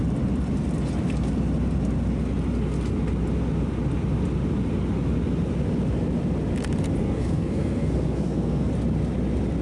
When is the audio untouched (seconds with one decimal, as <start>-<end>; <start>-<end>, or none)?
0.0-7.0; 8.7-9.6